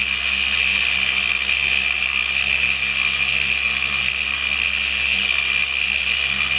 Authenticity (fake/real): real